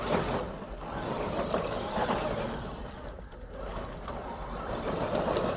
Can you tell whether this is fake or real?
real